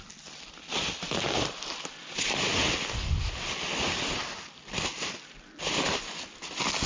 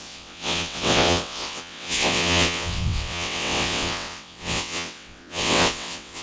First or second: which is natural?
first